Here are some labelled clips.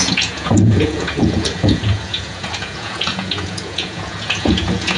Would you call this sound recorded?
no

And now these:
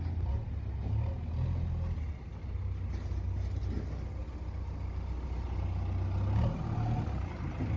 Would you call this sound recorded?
yes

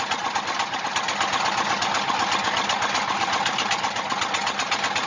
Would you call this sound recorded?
yes